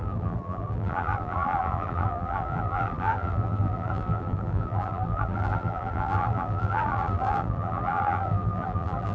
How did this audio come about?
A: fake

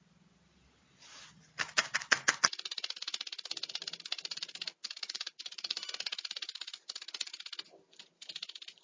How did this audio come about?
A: real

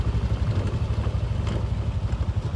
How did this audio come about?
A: real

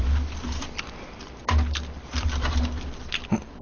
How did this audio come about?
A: real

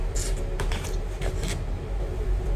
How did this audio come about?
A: fake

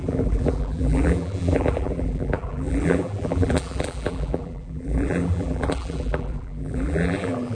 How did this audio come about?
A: fake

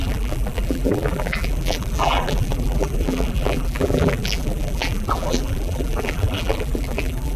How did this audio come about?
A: fake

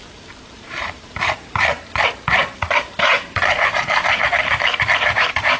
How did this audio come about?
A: fake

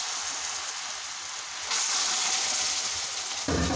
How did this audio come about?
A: real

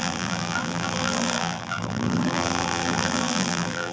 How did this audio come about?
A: fake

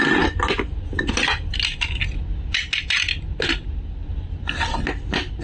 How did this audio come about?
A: real